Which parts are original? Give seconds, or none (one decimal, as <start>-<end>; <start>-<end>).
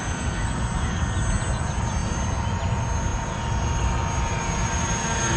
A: 0.0-5.4